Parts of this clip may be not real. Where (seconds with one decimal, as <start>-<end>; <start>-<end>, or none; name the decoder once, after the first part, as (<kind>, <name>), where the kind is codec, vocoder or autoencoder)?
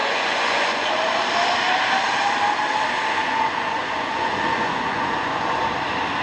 0.0-0.9 (vocoder, Vocos); 3.2-5.6